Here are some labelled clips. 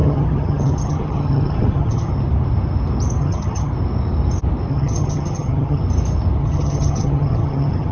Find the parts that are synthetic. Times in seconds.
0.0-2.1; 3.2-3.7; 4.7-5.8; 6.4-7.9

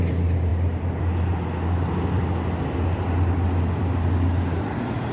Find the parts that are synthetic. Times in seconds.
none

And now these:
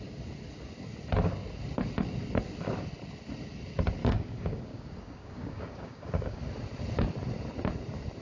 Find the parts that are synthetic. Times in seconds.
4.0-6.4

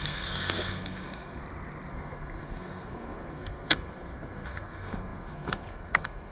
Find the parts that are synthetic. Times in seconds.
0.0-1.4; 1.9-6.3

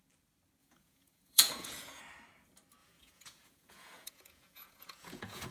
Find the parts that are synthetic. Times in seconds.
0.6-2.0; 2.8-5.5

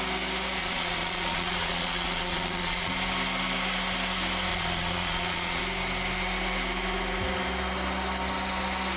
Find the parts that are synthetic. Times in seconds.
0.6-2.9; 4.5-5.6

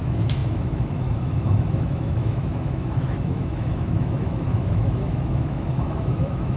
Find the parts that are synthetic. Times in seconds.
0.0-6.6

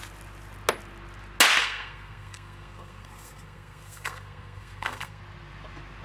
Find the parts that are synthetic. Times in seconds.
1.6-5.2